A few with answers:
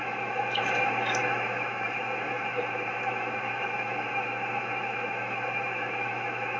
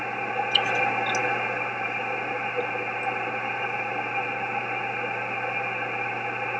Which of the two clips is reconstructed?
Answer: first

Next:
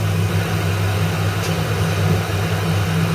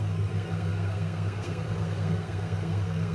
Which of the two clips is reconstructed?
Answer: second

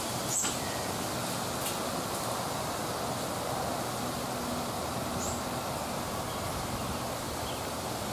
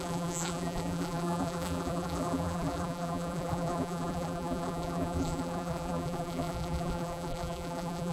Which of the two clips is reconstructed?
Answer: second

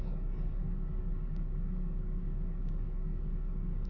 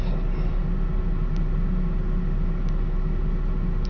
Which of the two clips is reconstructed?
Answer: first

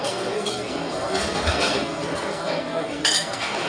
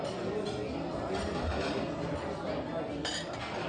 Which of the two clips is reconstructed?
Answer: first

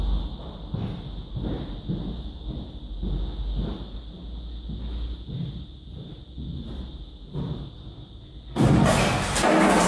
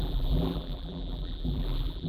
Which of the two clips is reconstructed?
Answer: second